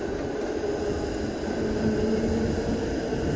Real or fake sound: real